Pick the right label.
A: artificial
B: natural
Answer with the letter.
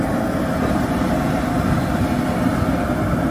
B